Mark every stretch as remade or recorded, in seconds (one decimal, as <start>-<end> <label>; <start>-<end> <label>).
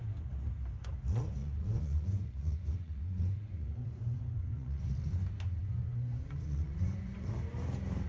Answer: 0.0-1.4 recorded; 1.4-4.8 remade; 4.8-5.6 recorded; 5.6-7.3 remade; 7.3-8.1 recorded